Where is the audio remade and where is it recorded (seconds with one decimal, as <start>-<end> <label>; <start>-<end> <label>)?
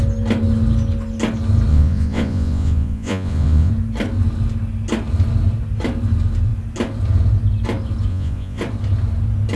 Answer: 0.0-1.7 recorded; 1.7-3.7 remade; 3.7-8.1 recorded; 8.1-8.6 remade; 8.6-9.6 recorded